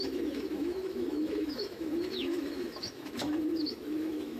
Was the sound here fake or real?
fake